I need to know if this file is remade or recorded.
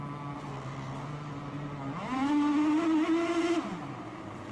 recorded